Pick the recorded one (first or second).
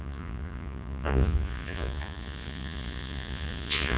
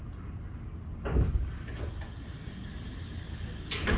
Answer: second